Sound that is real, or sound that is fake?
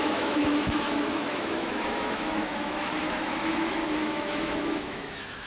fake